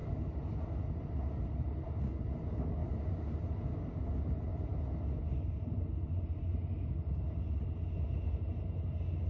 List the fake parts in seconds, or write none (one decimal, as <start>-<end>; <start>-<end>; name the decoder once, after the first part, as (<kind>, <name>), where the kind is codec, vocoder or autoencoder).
none